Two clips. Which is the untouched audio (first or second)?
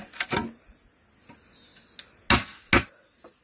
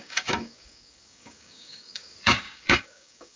first